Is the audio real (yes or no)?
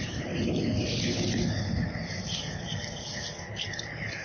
yes